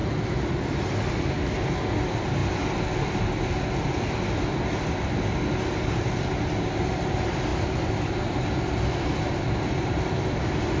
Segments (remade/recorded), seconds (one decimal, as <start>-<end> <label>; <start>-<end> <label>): 0.0-1.1 remade; 1.1-2.4 recorded; 2.4-5.2 remade; 5.2-7.5 recorded; 7.5-8.4 remade; 8.4-10.8 recorded